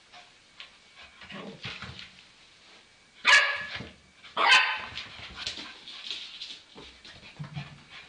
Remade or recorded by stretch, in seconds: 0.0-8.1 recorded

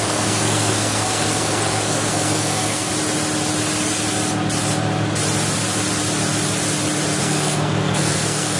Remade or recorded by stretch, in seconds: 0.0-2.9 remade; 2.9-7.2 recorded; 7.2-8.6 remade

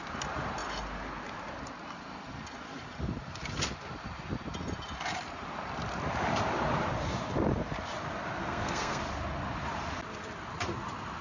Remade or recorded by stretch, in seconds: 0.0-8.4 recorded; 8.4-9.0 remade; 9.0-11.2 recorded

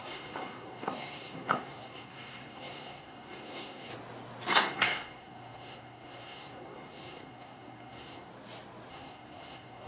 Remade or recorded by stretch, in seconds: 0.0-3.9 remade; 3.9-4.5 recorded; 4.5-8.3 remade; 8.3-8.9 recorded; 8.9-9.9 remade

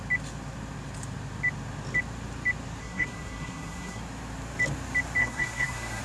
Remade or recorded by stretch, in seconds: 0.0-2.8 recorded; 2.8-4.0 remade; 4.0-5.2 recorded; 5.2-6.0 remade

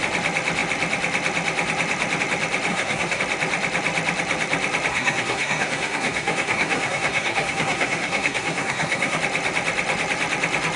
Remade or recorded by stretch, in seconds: 0.0-2.7 recorded; 2.7-3.2 remade; 3.2-4.9 recorded; 4.9-9.2 remade; 9.2-10.8 recorded

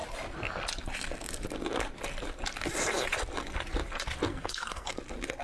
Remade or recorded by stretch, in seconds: 0.0-4.3 recorded; 4.3-4.9 remade; 4.9-5.4 recorded

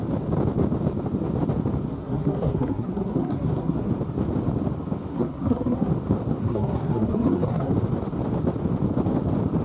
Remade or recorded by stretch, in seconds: 0.0-1.9 recorded; 1.9-3.9 remade; 3.9-5.1 recorded; 5.1-5.9 remade; 5.9-6.4 recorded; 6.4-7.7 remade; 7.7-9.6 recorded